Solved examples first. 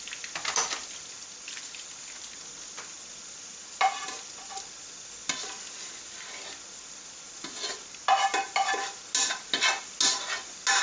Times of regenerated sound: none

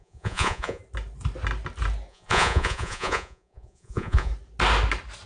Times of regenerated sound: 0.0-0.8 (vocoder, Vocos); 2.1-4.3

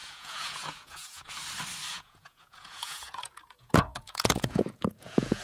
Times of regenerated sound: 0.0-1.3 (vocoder, Vocos); 1.9-5.4